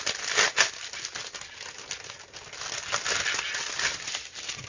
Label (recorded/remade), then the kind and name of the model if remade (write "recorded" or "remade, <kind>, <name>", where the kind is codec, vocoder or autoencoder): recorded